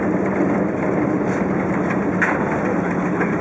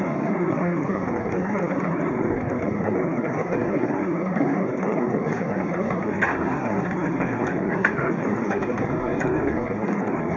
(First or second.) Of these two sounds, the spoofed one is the second